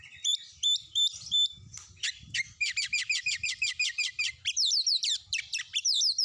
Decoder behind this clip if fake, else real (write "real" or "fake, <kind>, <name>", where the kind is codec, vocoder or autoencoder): fake, vocoder, BigVGAN v2